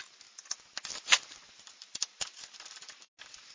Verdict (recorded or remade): recorded